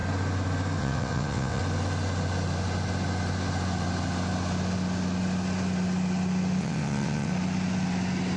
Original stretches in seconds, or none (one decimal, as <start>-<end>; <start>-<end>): 0.0-0.8; 1.6-6.6; 7.3-8.4